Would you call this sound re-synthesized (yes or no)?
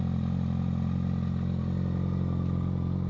no